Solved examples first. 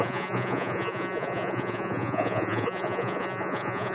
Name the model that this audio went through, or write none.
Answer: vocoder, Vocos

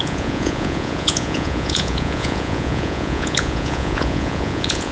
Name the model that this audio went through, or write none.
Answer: vocoder, Vocos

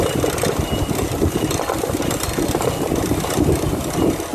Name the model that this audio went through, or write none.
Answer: none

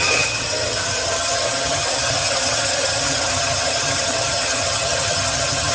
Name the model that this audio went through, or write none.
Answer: vocoder, HiFi-GAN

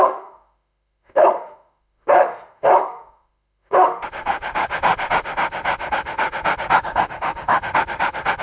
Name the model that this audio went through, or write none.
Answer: autoencoder, DAC-VAE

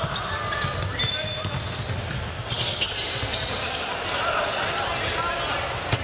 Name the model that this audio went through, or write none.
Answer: none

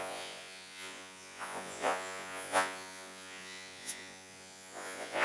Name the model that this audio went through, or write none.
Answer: vocoder, Vocos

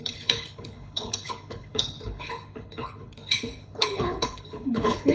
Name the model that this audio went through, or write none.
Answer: codec, HILCodec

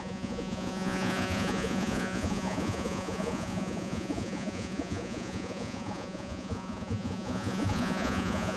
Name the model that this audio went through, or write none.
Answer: vocoder, Vocos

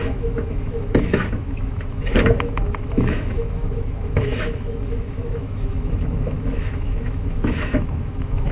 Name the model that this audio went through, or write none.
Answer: autoencoder, DAC-VAE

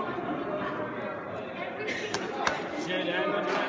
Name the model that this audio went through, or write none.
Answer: none